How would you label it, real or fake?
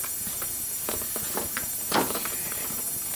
fake